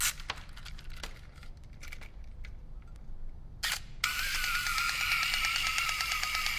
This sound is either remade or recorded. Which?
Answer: recorded